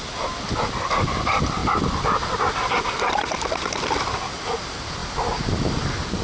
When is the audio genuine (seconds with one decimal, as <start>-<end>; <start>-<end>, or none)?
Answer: 0.0-1.6; 3.9-6.2

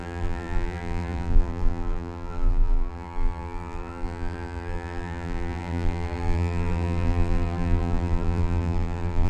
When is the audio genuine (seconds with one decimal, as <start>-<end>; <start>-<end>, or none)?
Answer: none

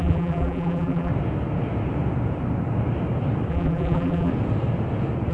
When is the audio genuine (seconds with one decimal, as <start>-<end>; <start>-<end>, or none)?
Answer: 1.1-3.5; 4.3-5.3